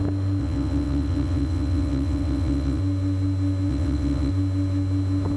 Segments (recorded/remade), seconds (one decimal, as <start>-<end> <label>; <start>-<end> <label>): 0.0-0.4 recorded; 0.4-2.8 remade; 2.8-3.7 recorded; 3.7-4.3 remade; 4.3-5.4 recorded